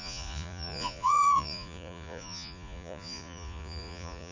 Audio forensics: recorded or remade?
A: remade